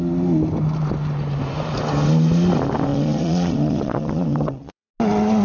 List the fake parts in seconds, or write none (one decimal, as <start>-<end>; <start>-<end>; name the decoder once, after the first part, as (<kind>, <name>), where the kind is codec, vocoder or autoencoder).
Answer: 2.9-4.9 (vocoder, Vocos)